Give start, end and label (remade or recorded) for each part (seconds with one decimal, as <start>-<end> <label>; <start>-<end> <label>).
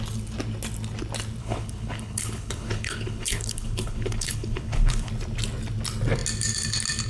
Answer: 0.0-1.4 recorded; 1.4-5.1 remade; 5.1-7.1 recorded